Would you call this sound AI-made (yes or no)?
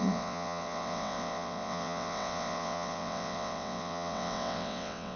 yes